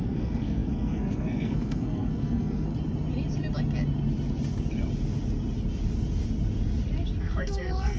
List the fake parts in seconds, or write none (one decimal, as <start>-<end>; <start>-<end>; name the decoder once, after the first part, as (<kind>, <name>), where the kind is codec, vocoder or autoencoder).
0.0-2.7 (codec, SNAC); 7.2-8.0